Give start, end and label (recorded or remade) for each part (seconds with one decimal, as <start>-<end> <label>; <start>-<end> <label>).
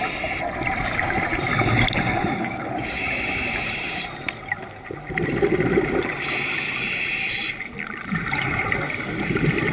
0.0-1.5 recorded; 1.5-2.7 remade; 2.7-9.7 recorded